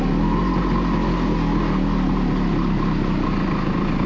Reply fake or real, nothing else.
real